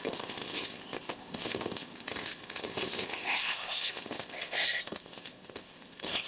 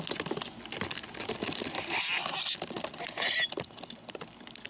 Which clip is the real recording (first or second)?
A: second